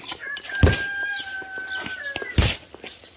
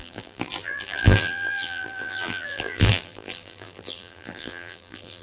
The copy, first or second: second